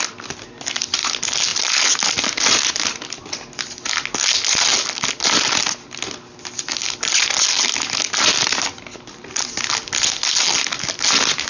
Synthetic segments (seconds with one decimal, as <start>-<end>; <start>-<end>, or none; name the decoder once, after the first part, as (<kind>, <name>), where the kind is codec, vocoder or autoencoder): none